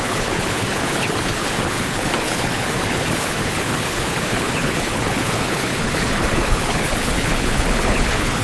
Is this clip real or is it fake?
fake